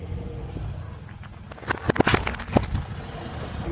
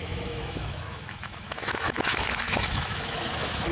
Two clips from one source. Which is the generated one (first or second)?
second